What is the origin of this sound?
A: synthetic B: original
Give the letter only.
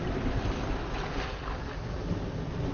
B